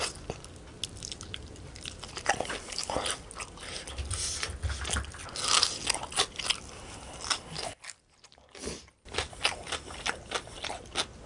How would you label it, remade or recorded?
recorded